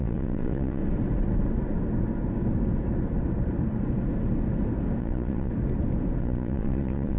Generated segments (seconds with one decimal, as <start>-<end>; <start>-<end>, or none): 0.0-0.8; 5.0-5.5; 6.2-7.2